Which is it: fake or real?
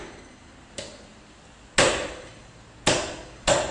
real